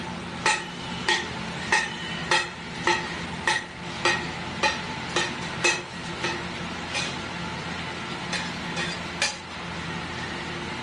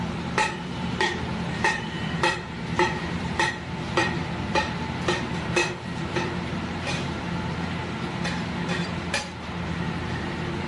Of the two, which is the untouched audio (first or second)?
first